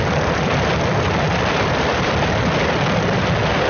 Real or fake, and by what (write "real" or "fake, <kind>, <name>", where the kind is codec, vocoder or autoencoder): real